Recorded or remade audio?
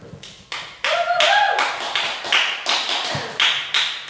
recorded